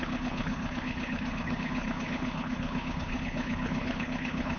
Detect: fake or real fake